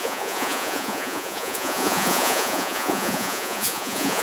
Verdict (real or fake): fake